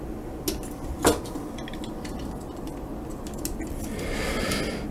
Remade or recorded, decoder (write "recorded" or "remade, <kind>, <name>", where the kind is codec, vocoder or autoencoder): recorded